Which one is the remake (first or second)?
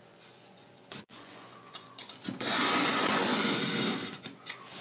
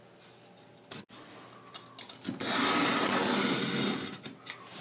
first